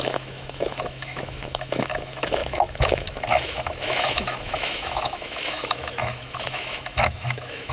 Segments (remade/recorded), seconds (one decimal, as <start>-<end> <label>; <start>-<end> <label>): 0.0-7.7 remade